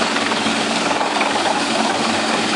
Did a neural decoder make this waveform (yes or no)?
yes